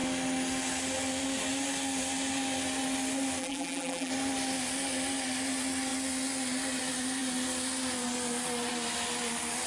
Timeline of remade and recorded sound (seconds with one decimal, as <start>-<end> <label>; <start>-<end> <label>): 0.0-3.4 recorded; 3.4-4.1 remade; 4.1-9.7 recorded